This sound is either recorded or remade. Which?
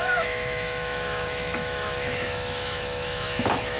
remade